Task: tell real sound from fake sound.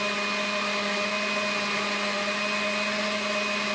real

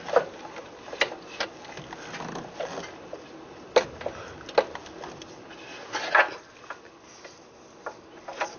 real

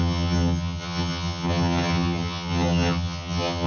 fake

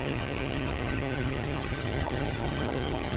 fake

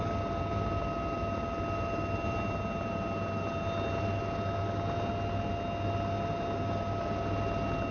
real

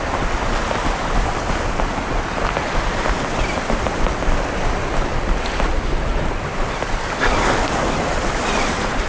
real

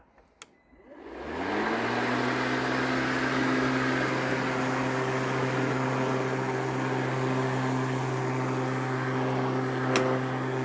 real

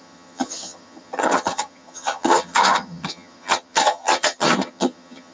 fake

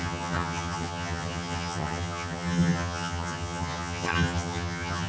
fake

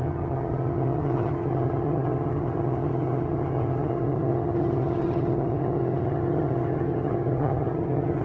fake